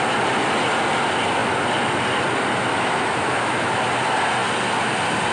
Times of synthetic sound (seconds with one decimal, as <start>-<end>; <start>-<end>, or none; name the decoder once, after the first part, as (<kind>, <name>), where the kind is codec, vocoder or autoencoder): 2.7-3.7 (autoencoder, DAC-VAE)